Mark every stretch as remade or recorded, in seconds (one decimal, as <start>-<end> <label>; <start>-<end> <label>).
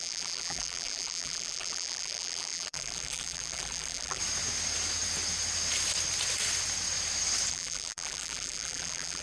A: 0.0-4.2 remade; 4.2-7.5 recorded; 7.5-9.2 remade